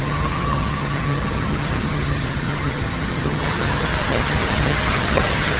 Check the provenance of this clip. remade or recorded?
remade